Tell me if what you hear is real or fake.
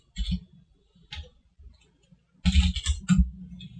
real